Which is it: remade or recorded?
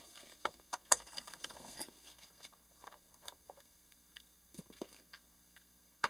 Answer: remade